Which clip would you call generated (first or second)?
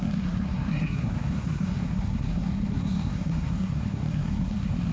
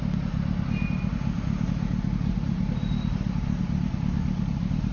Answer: first